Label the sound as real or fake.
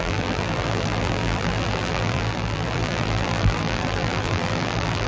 fake